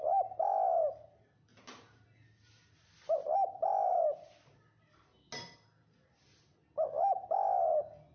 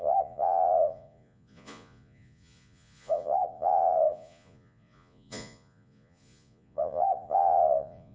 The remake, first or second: second